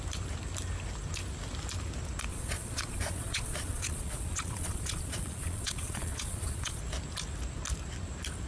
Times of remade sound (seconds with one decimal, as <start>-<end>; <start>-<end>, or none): 2.3-6.8

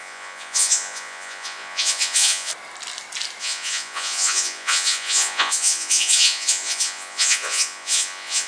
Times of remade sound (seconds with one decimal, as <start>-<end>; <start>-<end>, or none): 0.0-2.5; 3.4-8.5